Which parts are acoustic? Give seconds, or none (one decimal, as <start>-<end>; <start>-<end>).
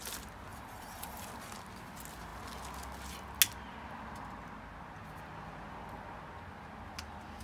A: 0.0-0.5; 1.3-7.4